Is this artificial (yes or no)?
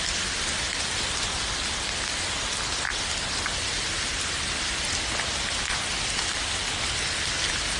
no